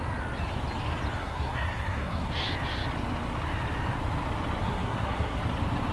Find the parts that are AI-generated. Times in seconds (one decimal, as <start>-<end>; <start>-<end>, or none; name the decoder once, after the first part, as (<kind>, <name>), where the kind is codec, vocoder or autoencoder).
1.2-2.3 (codec, SNAC); 4.6-5.4

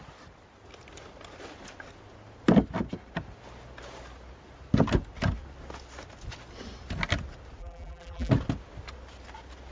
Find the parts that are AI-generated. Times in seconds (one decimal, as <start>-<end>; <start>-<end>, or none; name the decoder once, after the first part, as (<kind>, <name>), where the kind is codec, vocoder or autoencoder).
7.6-8.3 (vocoder, BigVGAN v2)

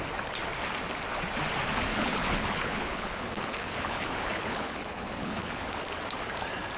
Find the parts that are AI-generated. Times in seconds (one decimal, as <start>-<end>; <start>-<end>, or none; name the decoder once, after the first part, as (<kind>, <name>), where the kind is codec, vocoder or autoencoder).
1.9-5.6 (codec, HILCodec)